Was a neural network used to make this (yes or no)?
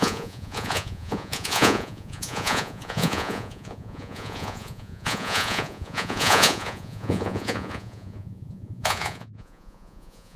yes